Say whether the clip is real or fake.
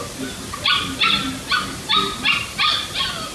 real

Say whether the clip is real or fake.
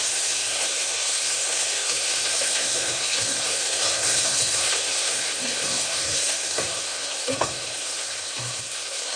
fake